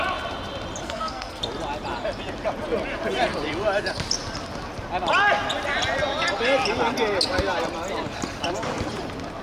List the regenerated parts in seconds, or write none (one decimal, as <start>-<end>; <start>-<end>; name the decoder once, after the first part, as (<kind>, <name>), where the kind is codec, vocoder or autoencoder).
0.8-1.4 (codec, SNAC)